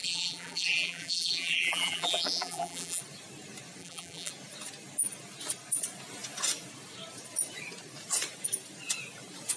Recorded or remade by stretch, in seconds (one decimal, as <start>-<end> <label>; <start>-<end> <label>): 0.0-3.0 remade; 3.0-3.8 recorded; 3.8-4.3 remade; 4.3-9.6 recorded